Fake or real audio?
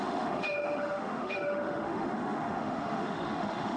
fake